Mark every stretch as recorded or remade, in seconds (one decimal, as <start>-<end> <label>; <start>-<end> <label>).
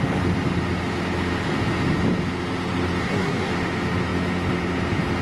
0.0-3.0 recorded; 3.0-3.5 remade; 3.5-5.2 recorded